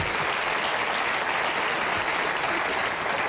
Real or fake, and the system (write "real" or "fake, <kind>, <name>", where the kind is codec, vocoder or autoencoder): real